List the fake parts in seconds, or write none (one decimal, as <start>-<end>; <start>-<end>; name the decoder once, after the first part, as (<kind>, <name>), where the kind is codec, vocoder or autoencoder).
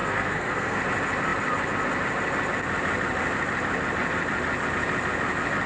0.0-0.8 (codec, SNAC)